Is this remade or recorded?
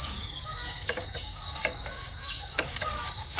remade